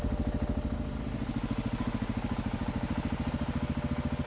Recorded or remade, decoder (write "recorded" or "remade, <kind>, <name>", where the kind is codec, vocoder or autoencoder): recorded